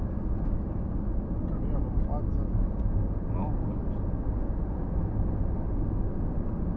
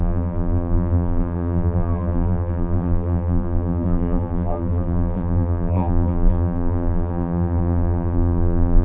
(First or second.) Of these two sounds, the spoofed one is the second